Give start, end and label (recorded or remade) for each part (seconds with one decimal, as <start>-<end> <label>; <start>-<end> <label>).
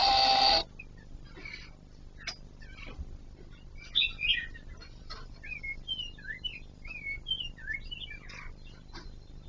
0.0-9.5 recorded